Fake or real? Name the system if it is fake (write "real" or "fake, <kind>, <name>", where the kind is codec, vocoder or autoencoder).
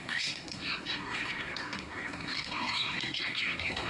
fake, codec, SNAC